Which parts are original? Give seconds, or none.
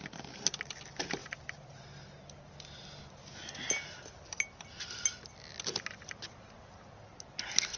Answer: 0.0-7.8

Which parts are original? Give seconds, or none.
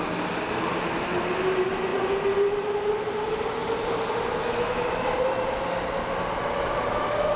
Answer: 0.0-7.4